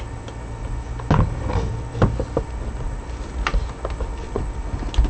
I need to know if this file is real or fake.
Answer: real